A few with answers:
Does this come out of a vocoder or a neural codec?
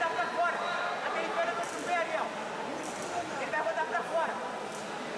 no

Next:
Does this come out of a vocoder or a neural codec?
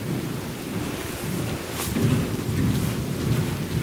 no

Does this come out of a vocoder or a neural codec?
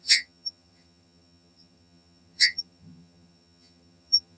yes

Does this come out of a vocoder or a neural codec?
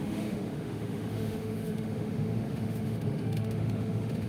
yes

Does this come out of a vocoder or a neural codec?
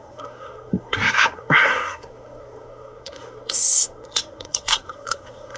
yes